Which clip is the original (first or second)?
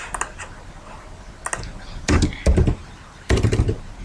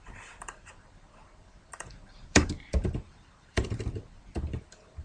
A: first